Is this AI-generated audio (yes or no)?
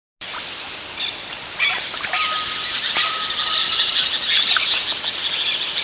no